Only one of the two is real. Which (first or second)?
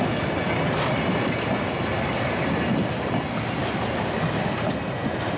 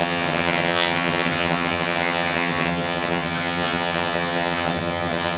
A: first